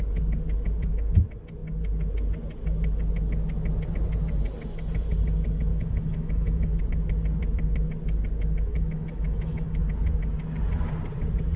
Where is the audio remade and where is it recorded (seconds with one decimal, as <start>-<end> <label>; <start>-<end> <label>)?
0.0-5.7 recorded; 5.7-6.8 remade; 6.8-8.7 recorded; 8.7-9.8 remade; 9.8-11.6 recorded